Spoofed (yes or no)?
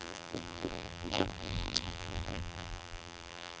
yes